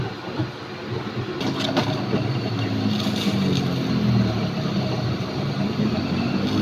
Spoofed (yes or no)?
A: no